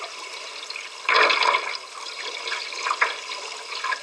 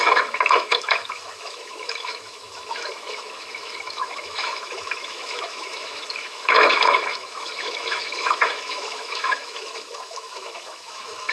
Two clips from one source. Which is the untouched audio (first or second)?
first